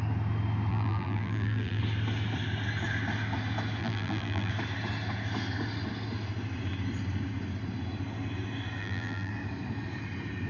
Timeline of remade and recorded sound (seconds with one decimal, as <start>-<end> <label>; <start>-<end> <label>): 0.0-0.7 recorded; 0.7-1.8 remade; 1.8-3.8 recorded; 3.8-4.5 remade; 4.5-8.8 recorded; 8.8-9.3 remade; 9.3-10.5 recorded